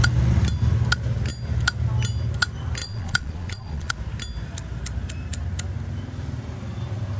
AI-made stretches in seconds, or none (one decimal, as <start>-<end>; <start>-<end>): 2.8-3.9

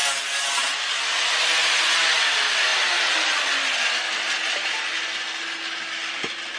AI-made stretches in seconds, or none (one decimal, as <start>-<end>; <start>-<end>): none

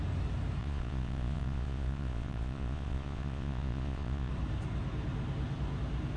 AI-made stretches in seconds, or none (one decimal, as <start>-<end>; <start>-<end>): 0.6-4.3

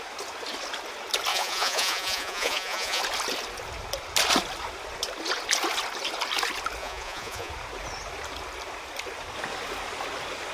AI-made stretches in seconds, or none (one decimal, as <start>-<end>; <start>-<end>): 1.3-3.0; 6.8-7.5

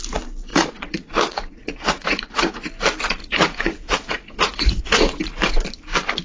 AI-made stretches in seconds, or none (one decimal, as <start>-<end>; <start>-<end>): 0.5-2.7; 3.2-5.2

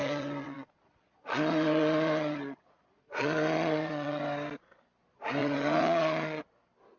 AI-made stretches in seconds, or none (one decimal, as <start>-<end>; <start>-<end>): 0.0-4.2; 5.4-6.4

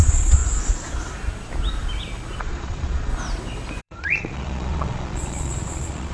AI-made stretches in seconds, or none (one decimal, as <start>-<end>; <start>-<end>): 0.0-0.4; 2.4-3.1; 3.8-6.1

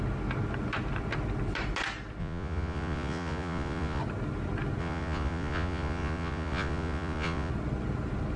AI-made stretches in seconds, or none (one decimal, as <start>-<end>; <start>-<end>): 2.2-4.0; 4.8-7.5